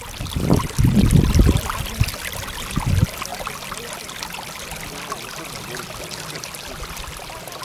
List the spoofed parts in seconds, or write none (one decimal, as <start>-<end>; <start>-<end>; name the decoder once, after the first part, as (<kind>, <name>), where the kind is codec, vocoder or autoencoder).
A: none